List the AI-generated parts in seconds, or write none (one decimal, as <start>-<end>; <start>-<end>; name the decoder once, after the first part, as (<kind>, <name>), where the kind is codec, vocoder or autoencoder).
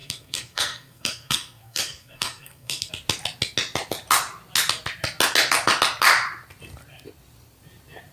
0.0-2.9 (codec, SNAC)